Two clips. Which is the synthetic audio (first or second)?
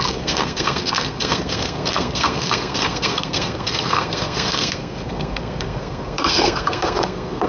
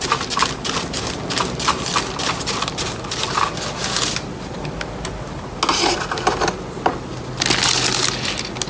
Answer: first